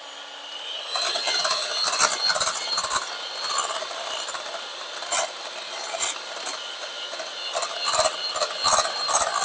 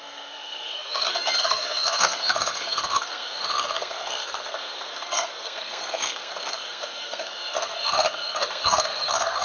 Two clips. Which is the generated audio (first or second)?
second